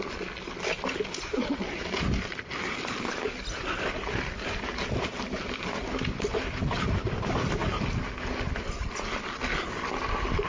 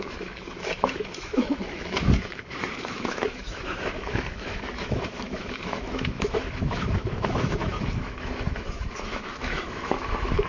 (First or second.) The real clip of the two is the first